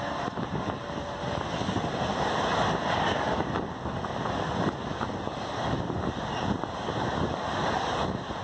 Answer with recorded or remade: recorded